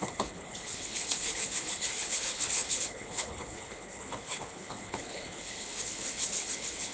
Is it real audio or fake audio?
fake